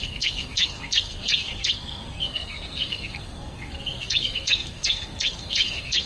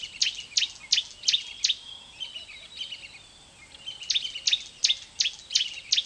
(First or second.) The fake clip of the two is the first